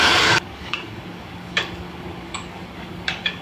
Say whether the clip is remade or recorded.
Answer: remade